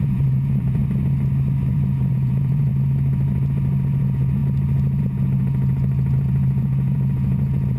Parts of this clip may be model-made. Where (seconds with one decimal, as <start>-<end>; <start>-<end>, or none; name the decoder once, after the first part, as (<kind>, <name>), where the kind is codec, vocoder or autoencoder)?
0.0-0.8 (vocoder, Vocos); 1.7-2.7; 4.0-4.4; 5.0-7.8